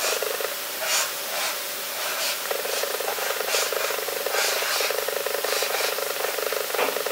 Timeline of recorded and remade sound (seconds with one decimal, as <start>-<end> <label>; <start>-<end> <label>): 0.0-1.2 recorded; 1.2-2.9 remade; 2.9-7.1 recorded